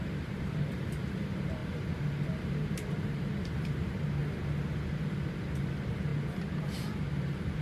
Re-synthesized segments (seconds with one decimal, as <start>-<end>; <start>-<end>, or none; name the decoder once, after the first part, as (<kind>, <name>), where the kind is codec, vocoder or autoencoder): 0.0-1.6 (vocoder, BigVGAN v2); 2.5-4.2; 5.3-6.1; 6.6-7.6